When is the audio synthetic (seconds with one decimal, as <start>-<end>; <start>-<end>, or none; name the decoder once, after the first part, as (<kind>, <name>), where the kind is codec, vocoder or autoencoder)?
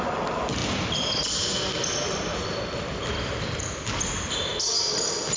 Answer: none